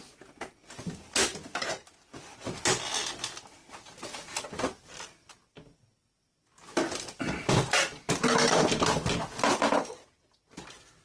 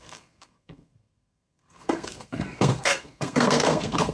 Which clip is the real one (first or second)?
first